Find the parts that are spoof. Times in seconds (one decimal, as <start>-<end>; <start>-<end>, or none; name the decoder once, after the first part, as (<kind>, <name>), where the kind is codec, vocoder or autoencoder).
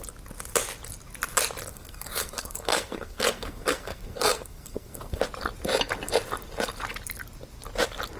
1.7-5.2 (codec, SNAC)